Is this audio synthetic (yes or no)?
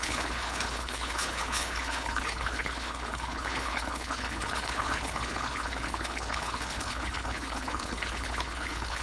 yes